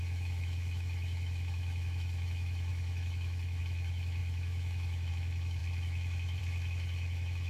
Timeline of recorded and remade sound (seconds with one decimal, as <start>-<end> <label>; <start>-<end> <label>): 0.0-7.5 remade